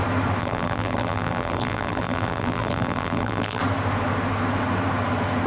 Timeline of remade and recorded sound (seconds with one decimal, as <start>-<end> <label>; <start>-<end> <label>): 0.0-0.4 recorded; 0.4-3.6 remade; 3.6-5.5 recorded